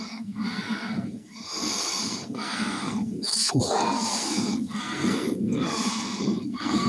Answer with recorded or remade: remade